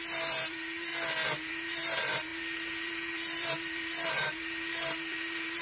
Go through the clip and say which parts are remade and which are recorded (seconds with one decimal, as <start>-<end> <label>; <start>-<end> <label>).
0.0-0.9 remade; 0.9-1.5 recorded; 1.5-5.6 remade